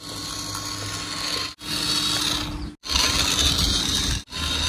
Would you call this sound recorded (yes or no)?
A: yes